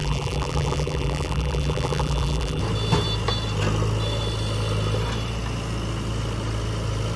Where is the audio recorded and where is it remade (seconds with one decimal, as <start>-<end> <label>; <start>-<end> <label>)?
0.0-2.6 remade; 2.6-7.2 recorded